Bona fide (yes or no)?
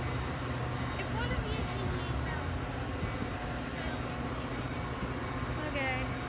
yes